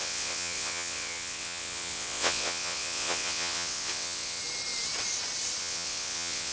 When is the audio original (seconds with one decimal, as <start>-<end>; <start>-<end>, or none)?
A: 4.4-5.6